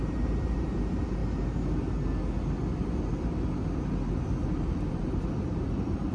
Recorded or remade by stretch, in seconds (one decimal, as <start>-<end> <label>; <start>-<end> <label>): 0.0-1.2 remade; 1.2-4.9 recorded; 4.9-6.1 remade